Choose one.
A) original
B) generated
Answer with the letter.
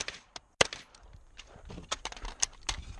A